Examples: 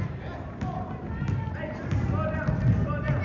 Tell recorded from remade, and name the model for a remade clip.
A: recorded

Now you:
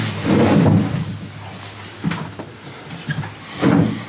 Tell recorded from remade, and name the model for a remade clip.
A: recorded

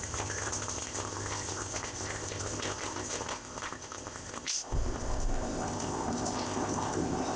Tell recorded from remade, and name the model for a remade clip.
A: remade, codec, ZipCodec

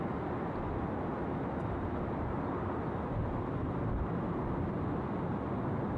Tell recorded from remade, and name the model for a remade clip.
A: recorded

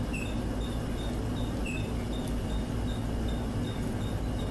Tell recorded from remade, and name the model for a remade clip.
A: recorded